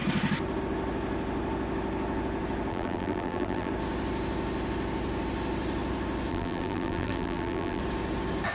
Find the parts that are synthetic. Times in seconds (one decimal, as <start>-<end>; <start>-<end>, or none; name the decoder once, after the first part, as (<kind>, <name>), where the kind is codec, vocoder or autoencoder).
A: 2.7-3.7 (vocoder, BigVGAN v2); 6.3-7.8